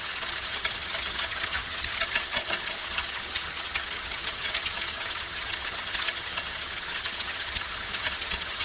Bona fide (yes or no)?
no